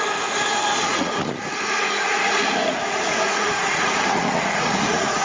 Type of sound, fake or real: fake